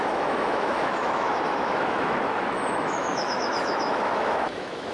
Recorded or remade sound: remade